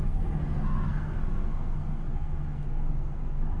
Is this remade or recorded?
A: remade